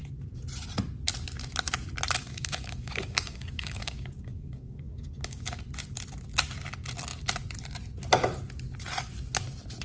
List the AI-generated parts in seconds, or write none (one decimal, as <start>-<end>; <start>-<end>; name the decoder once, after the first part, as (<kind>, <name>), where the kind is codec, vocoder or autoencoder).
2.3-5.6 (codec, DAC)